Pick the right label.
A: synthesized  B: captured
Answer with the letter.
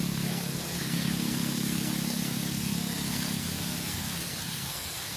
A